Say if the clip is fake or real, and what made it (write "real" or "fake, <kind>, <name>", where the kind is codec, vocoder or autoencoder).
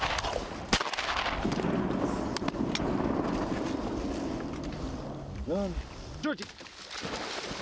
real